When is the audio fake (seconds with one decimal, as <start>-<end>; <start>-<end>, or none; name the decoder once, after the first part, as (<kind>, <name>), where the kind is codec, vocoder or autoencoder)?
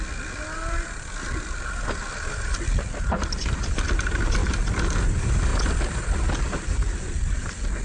none